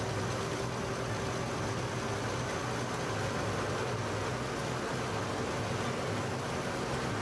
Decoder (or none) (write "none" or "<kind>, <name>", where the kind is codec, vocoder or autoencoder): none